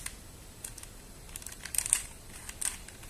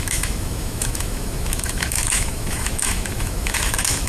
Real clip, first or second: first